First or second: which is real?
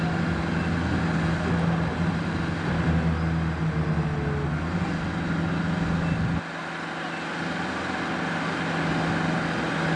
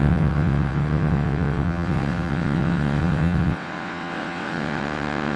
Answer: first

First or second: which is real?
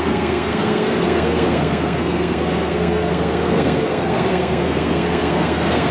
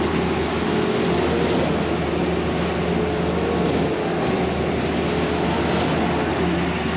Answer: second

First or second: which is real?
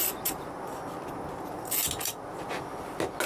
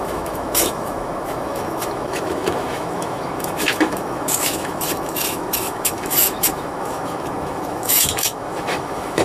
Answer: first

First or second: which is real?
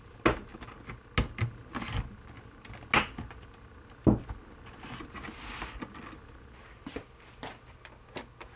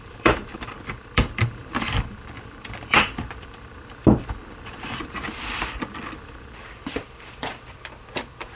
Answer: first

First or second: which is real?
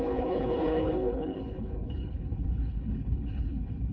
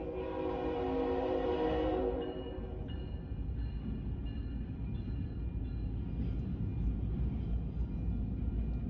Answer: second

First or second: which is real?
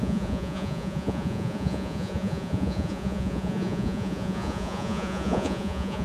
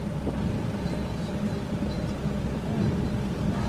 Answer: second